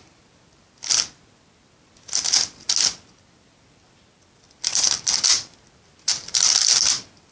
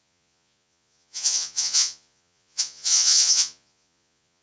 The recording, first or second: first